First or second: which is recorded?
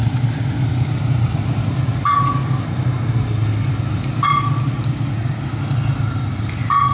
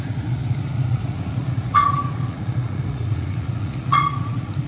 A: first